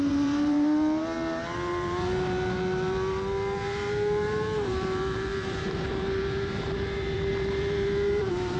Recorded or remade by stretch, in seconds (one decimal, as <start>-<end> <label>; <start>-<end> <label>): 0.0-8.6 remade